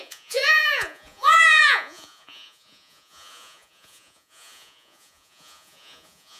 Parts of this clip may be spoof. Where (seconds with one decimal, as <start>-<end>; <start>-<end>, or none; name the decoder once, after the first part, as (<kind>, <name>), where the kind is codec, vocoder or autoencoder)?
0.0-6.4 (vocoder, Vocos)